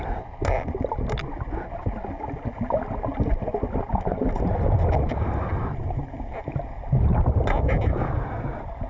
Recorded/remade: recorded